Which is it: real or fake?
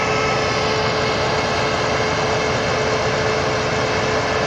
real